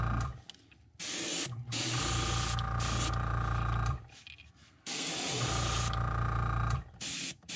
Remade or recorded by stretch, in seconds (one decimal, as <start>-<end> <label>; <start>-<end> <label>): 0.0-4.6 recorded; 4.6-5.1 remade; 5.1-7.6 recorded